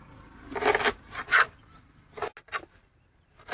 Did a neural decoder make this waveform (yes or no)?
no